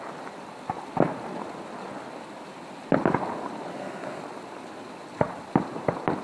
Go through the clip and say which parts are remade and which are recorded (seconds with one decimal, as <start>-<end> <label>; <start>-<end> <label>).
0.0-3.7 recorded; 3.7-4.2 remade; 4.2-6.2 recorded